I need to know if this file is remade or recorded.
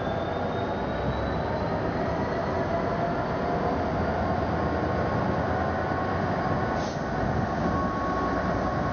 recorded